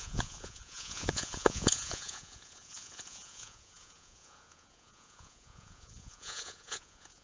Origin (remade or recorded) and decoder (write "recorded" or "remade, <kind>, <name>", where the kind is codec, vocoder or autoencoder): remade, vocoder, Vocos